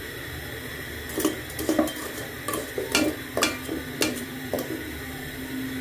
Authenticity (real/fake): real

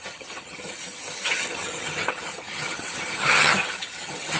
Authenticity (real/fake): fake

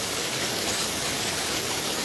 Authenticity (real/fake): fake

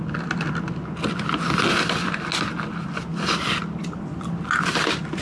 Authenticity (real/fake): real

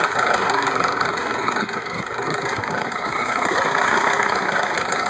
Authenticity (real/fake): fake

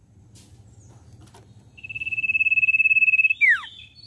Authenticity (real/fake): real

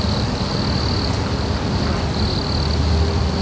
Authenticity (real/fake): real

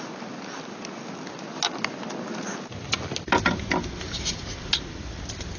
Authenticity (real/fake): real